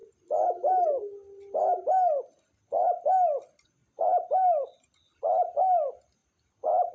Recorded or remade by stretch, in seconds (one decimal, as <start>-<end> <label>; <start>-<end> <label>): 0.0-3.8 recorded; 3.8-5.2 remade; 5.2-6.9 recorded